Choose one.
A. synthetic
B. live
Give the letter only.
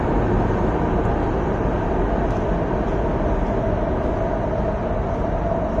B